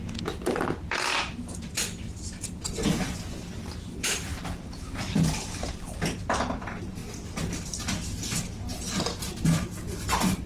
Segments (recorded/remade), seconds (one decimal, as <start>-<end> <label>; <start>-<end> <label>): 0.0-7.0 remade; 7.0-8.5 recorded; 8.5-10.5 remade